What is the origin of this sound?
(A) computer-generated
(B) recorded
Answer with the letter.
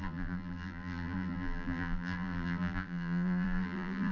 A